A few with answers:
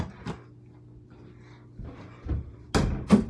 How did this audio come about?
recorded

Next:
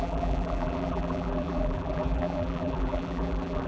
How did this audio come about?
remade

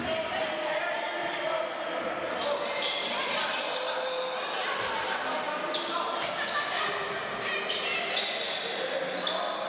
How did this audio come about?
recorded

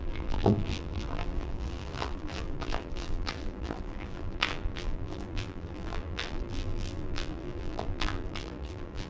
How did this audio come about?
remade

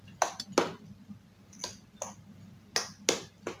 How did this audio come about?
recorded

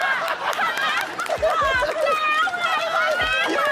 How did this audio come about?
recorded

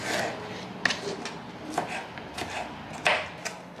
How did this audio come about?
recorded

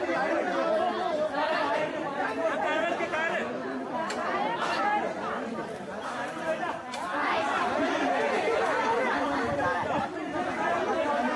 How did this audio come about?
recorded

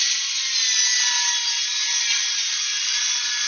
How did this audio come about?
recorded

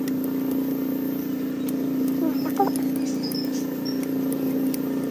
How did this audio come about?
recorded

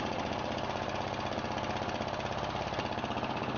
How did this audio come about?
remade